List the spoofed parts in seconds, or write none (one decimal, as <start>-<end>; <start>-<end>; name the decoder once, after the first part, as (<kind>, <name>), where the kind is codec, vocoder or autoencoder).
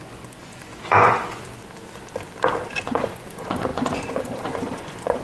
0.0-1.6 (vocoder, Vocos); 2.7-5.2